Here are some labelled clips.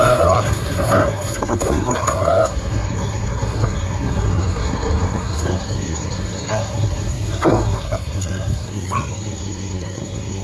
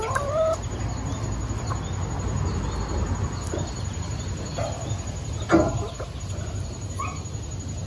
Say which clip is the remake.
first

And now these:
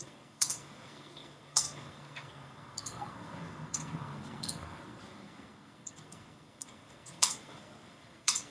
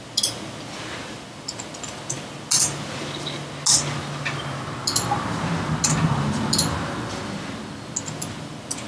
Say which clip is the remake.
first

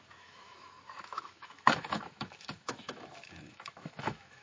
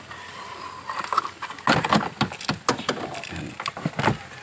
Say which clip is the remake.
first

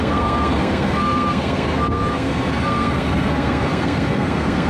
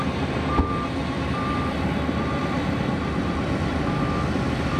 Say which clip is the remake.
first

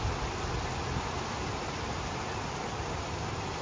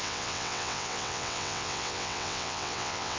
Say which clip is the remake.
second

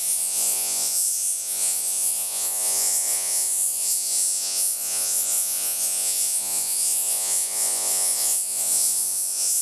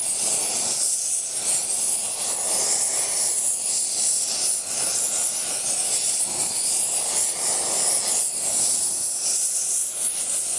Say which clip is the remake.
first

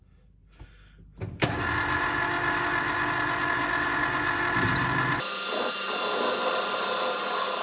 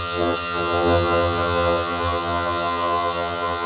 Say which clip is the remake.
second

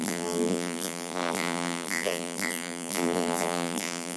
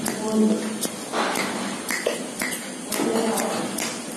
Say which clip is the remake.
first